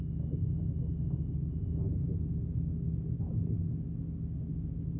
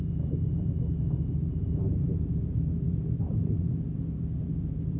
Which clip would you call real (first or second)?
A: first